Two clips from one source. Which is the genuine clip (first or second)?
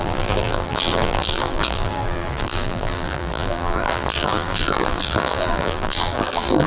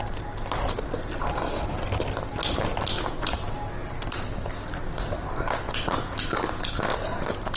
second